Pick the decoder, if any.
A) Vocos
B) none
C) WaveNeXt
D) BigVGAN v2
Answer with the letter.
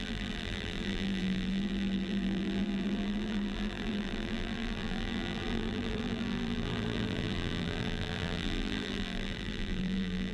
D